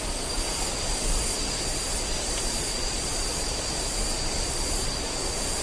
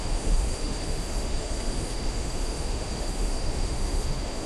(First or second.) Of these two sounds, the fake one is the second